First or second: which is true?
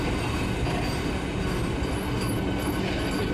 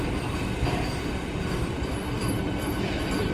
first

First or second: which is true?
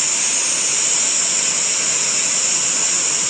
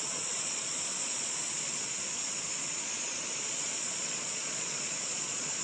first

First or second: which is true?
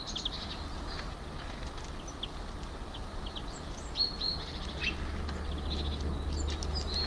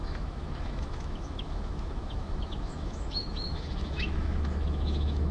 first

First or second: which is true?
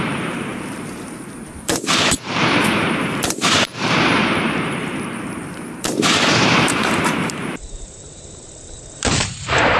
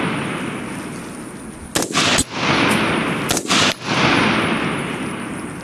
second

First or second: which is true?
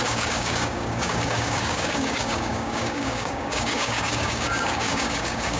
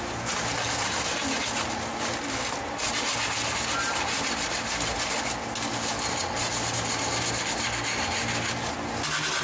second